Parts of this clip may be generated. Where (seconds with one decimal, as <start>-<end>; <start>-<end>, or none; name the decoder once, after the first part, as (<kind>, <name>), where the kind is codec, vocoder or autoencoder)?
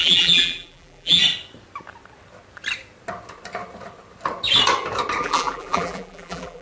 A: 0.0-1.2 (vocoder, BigVGAN v2); 5.2-6.6